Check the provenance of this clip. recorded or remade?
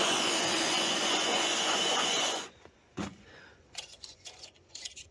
remade